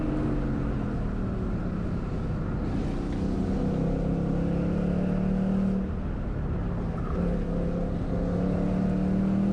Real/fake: real